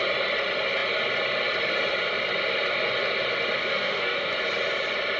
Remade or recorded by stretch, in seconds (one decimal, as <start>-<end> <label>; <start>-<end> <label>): 0.0-3.6 recorded; 3.6-4.3 remade; 4.3-5.2 recorded